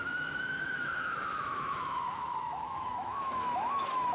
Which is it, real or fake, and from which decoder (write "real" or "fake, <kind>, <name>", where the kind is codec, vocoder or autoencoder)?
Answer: fake, autoencoder, DAC-VAE